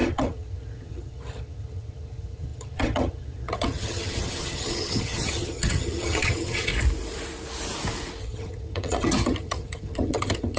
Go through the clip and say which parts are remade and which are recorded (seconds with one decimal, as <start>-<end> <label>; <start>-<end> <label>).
0.0-6.7 remade; 6.7-8.2 recorded; 8.2-10.6 remade